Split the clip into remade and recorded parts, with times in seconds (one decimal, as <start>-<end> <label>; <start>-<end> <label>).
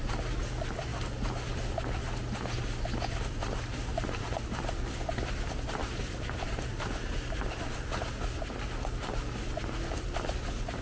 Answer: 0.0-3.9 recorded; 3.9-8.2 remade; 8.2-10.8 recorded